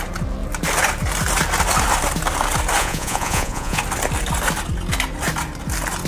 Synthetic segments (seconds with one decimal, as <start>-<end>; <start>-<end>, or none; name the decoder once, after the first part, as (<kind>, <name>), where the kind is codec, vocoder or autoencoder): 2.8-3.8 (vocoder, Vocos)